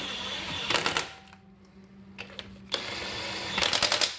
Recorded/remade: recorded